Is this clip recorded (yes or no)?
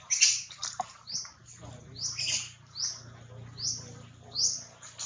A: yes